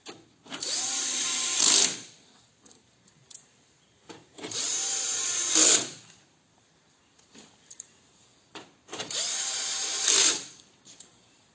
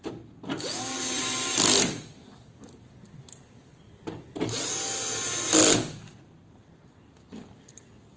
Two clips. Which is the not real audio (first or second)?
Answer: first